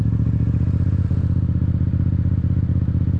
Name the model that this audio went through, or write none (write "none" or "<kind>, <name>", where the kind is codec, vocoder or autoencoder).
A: none